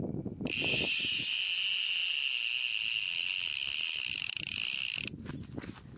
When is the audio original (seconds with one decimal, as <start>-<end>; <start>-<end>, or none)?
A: 0.0-6.0